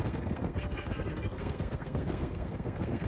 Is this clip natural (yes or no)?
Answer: no